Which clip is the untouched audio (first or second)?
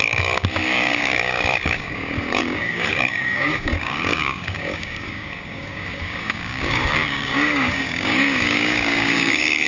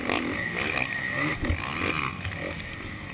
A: second